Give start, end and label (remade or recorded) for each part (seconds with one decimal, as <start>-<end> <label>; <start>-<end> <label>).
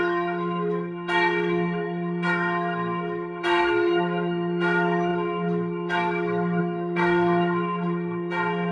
0.0-8.7 remade